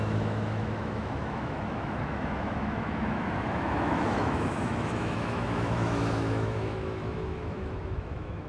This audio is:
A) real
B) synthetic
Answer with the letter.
B